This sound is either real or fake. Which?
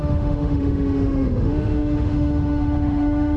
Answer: fake